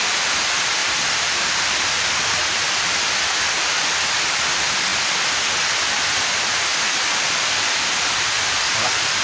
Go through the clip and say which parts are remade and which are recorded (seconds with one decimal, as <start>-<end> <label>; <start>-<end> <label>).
0.0-0.8 recorded; 0.8-4.4 remade; 4.4-9.2 recorded